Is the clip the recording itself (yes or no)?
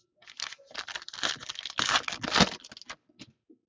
yes